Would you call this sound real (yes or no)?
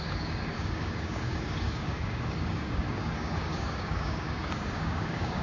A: no